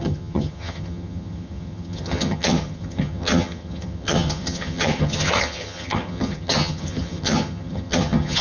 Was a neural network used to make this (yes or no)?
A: yes